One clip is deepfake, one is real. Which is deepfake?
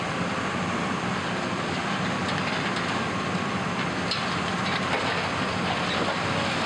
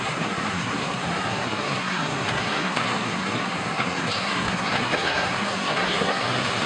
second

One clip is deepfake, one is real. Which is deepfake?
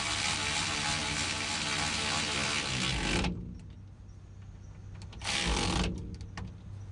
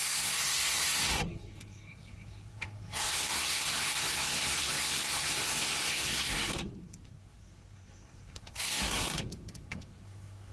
second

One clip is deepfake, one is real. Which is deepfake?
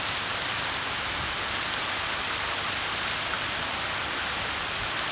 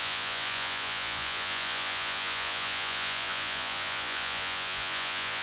second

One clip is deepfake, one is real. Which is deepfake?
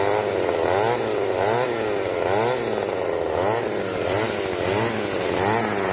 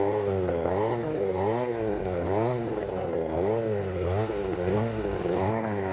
second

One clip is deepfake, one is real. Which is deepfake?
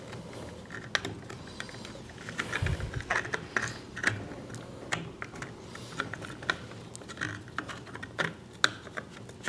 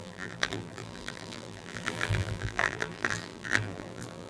second